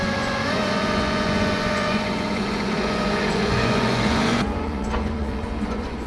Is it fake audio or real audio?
fake